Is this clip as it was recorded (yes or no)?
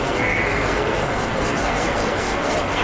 no